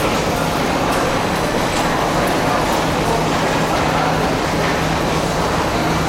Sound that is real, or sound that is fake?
real